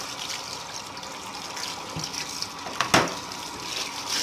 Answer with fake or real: real